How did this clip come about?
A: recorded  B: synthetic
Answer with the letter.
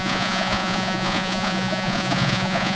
B